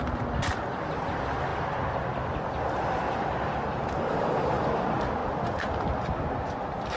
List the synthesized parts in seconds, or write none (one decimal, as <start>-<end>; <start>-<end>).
0.0-7.0